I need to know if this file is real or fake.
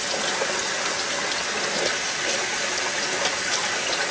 real